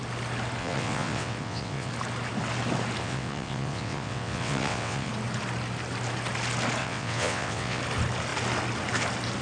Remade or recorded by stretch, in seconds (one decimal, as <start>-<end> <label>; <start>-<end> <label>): 0.0-0.6 recorded; 0.6-1.9 remade; 1.9-3.0 recorded; 3.0-5.1 remade; 5.1-6.8 recorded; 6.8-7.8 remade; 7.8-9.4 recorded

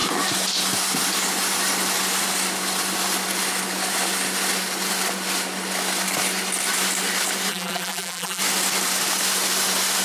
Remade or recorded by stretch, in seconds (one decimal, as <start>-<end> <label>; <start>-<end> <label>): 0.0-7.5 recorded; 7.5-8.4 remade; 8.4-10.0 recorded

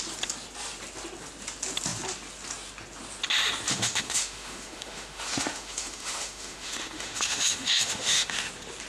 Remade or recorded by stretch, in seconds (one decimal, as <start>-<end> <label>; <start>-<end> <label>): 0.0-3.7 recorded; 3.7-8.5 remade; 8.5-8.9 recorded

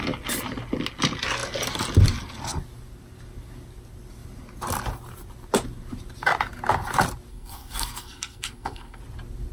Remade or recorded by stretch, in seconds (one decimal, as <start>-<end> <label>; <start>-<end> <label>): 0.0-7.3 recorded; 7.3-9.0 remade; 9.0-9.5 recorded

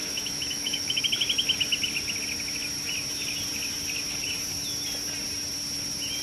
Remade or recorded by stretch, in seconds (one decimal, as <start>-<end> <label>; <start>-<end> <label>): 0.0-1.0 remade; 1.0-6.2 recorded

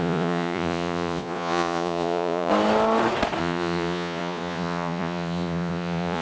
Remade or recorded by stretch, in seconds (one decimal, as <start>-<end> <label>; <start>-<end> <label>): 0.0-2.5 remade; 2.5-3.4 recorded; 3.4-6.2 remade